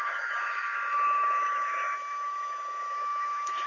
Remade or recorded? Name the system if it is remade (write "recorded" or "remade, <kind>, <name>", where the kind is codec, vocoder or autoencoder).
remade, autoencoder, DAC-VAE